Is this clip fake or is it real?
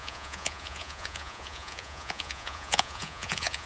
fake